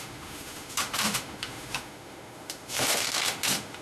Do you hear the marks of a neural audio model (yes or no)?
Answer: yes